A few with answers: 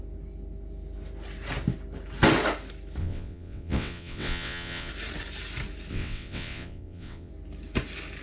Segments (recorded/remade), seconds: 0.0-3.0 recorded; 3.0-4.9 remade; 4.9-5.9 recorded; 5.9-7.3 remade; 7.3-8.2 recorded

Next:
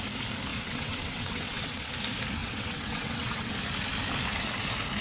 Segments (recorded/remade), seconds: 0.0-0.5 recorded; 0.5-1.9 remade; 1.9-2.4 recorded; 2.4-3.5 remade; 3.5-5.0 recorded